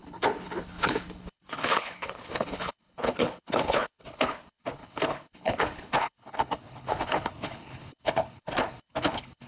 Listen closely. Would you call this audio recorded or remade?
remade